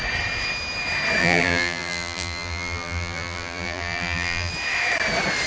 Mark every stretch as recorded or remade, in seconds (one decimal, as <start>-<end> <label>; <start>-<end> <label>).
0.0-1.2 recorded; 1.2-4.5 remade; 4.5-5.5 recorded